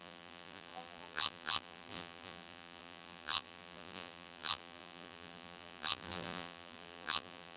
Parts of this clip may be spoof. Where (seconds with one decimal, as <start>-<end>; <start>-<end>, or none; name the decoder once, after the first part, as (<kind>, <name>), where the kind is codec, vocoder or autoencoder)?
0.0-7.6 (vocoder, BigVGAN v2)